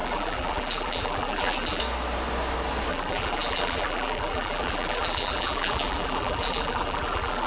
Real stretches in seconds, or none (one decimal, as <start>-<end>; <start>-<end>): 1.8-2.9